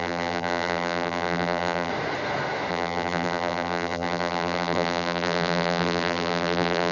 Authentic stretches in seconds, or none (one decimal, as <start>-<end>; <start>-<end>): 1.9-2.7